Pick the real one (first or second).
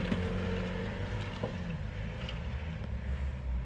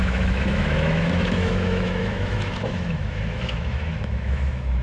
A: first